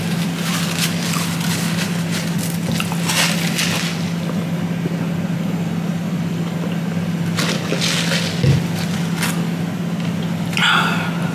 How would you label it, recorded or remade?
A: recorded